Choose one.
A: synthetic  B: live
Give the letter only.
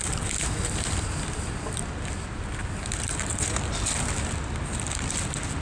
B